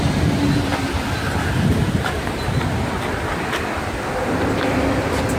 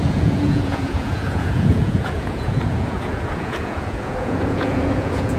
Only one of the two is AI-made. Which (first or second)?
second